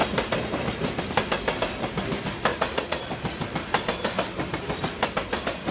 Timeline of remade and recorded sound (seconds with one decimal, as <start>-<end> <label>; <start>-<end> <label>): 0.0-2.5 recorded; 2.5-3.0 remade; 3.0-5.7 recorded